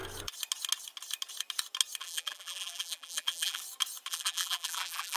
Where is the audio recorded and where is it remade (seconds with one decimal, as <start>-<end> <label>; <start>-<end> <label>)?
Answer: 0.0-2.0 recorded; 2.0-3.6 remade; 3.6-4.1 recorded; 4.1-5.2 remade